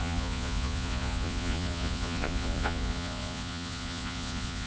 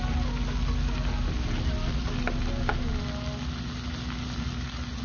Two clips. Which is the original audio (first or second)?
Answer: second